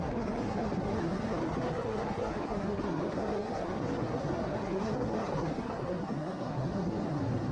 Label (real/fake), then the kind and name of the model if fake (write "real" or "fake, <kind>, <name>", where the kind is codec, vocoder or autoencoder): fake, codec, SNAC